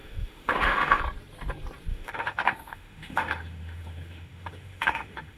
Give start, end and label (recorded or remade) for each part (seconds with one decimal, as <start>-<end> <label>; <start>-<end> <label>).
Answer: 0.0-1.0 remade; 1.0-1.9 recorded; 1.9-5.4 remade